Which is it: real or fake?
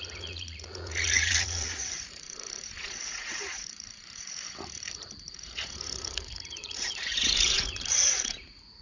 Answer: fake